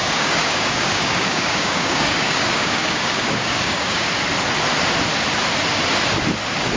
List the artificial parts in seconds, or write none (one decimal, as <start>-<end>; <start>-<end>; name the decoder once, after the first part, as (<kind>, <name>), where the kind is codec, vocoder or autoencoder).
0.0-4.1 (codec, DAC)